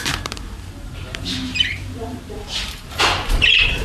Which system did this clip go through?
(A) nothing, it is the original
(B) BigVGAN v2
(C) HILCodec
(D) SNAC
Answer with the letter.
B